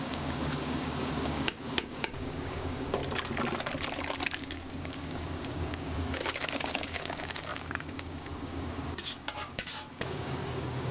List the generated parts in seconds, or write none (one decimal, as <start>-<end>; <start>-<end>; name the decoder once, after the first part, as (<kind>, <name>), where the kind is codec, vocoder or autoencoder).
0.0-3.0 (codec, DAC); 4.4-10.9